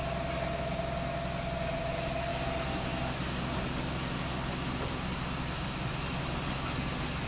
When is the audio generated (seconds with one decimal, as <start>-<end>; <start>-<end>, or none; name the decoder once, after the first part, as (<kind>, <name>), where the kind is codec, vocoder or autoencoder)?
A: none